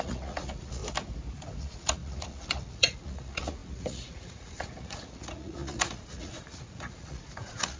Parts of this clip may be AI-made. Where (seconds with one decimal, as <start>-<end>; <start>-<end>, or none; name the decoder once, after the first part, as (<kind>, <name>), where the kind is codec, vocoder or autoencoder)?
0.0-0.8 (vocoder, Vocos); 1.6-7.8